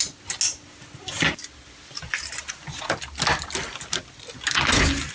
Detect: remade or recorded recorded